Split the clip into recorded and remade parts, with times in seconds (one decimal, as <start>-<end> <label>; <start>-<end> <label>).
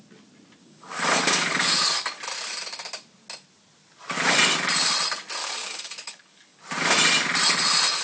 0.0-0.6 recorded; 0.6-2.2 remade; 2.2-5.4 recorded; 5.4-6.6 remade; 6.6-8.0 recorded